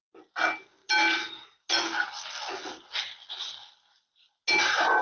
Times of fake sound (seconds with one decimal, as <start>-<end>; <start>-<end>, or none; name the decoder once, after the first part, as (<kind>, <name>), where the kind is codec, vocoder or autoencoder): none